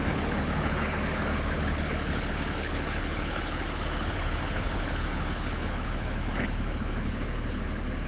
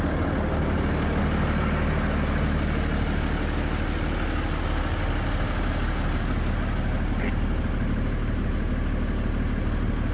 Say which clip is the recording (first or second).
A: second